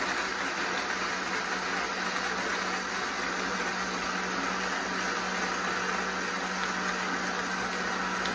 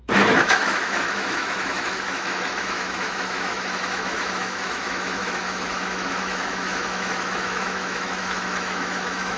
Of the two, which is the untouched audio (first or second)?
first